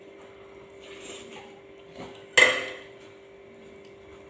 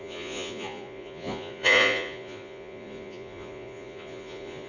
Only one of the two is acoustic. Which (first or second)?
first